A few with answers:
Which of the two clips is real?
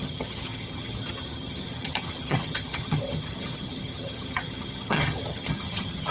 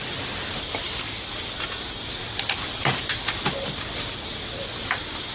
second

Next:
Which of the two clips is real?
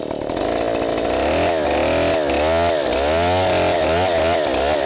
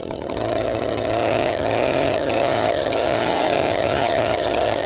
first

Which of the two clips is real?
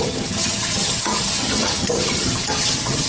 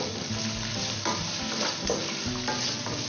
second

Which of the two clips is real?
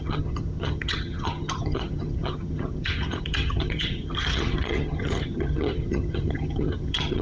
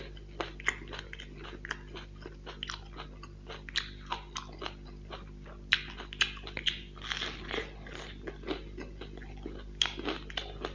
second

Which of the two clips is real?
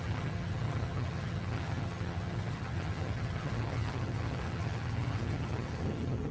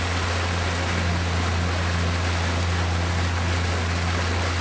second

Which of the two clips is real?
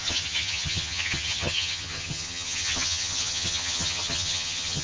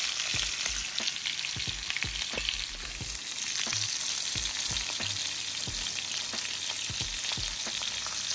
second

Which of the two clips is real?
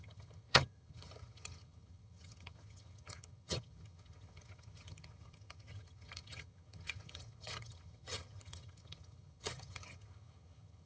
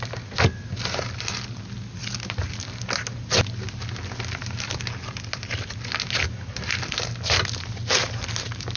second